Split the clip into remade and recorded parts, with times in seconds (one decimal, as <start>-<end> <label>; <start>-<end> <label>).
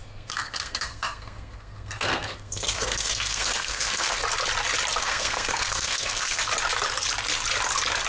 0.0-4.2 remade; 4.2-5.0 recorded; 5.0-6.4 remade; 6.4-8.1 recorded